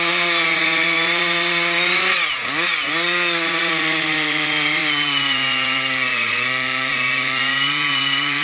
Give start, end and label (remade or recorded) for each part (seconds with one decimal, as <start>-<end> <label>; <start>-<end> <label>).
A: 0.0-8.4 remade